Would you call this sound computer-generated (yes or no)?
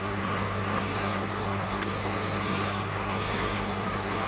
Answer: yes